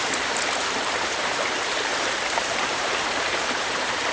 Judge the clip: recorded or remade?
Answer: remade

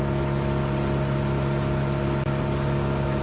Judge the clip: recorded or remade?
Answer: recorded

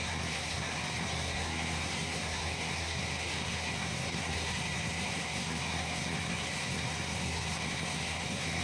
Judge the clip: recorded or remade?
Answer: remade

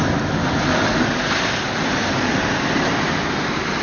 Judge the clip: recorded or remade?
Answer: recorded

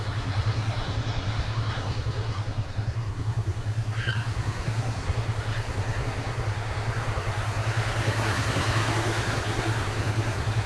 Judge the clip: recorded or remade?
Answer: remade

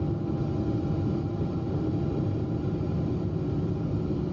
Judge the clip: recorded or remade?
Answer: remade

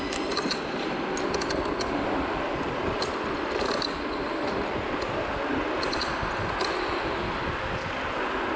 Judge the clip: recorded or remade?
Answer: recorded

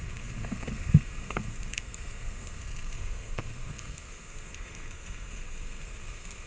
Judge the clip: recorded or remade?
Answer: remade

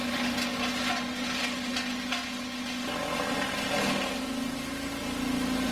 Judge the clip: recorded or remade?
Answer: recorded